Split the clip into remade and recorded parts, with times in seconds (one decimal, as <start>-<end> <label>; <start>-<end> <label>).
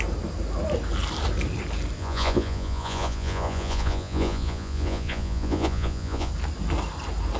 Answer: 0.0-2.0 recorded; 2.0-6.3 remade; 6.3-7.4 recorded